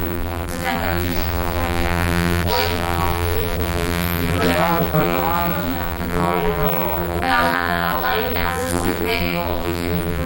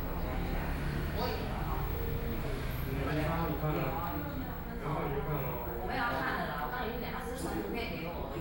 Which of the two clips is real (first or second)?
second